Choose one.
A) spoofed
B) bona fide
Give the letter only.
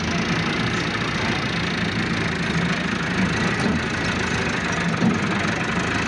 B